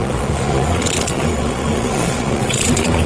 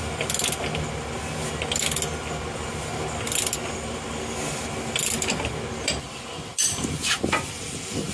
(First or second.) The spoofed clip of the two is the first